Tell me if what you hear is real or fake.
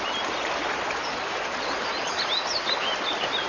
fake